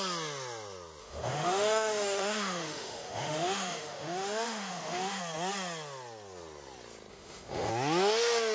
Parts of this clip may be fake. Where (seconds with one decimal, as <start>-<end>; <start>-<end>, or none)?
1.0-5.2; 7.1-7.7